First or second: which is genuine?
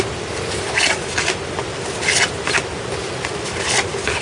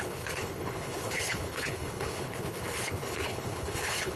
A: first